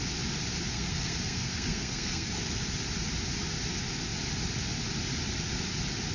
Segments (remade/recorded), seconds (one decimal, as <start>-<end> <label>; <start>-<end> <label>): 0.0-0.7 recorded; 0.7-2.4 remade; 2.4-6.1 recorded

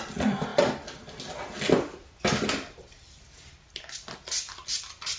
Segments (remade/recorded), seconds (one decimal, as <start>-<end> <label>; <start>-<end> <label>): 0.0-5.2 recorded

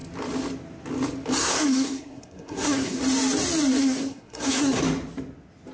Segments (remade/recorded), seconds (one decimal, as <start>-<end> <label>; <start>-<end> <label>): 0.0-1.4 recorded; 1.4-3.0 remade; 3.0-3.8 recorded; 3.8-4.8 remade; 4.8-5.7 recorded

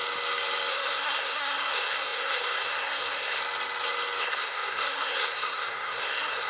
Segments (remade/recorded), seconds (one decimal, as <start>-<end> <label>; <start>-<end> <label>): 0.0-0.7 recorded; 0.7-3.4 remade; 3.4-4.2 recorded; 4.2-6.5 remade

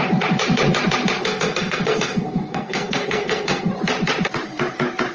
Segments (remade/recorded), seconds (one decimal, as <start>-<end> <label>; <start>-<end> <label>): 0.0-1.2 recorded; 1.2-3.7 remade; 3.7-5.1 recorded

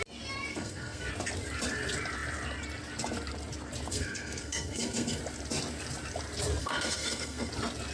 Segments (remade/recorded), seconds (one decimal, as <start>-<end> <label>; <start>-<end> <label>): 0.0-0.5 recorded; 0.5-1.1 remade; 1.1-3.9 recorded; 3.9-5.2 remade; 5.2-6.6 recorded; 6.6-7.5 remade; 7.5-7.9 recorded